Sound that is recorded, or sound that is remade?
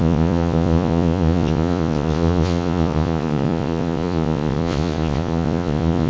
remade